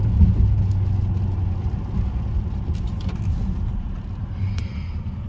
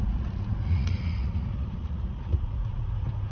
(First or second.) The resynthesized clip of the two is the second